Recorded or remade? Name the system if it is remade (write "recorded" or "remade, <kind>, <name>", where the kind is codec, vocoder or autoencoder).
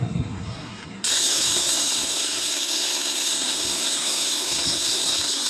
remade, codec, SNAC